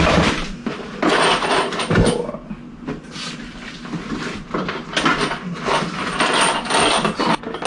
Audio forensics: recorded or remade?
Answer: recorded